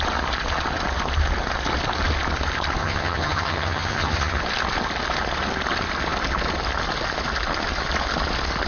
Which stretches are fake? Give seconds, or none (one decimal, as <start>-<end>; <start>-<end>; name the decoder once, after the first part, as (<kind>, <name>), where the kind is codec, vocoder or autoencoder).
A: 2.8-4.4 (vocoder, HiFi-GAN)